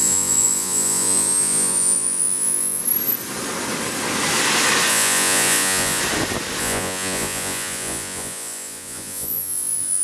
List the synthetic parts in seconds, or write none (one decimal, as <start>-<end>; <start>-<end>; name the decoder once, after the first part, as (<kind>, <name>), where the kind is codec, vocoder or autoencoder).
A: 0.0-2.8 (vocoder, Vocos); 4.9-6.0; 6.6-10.0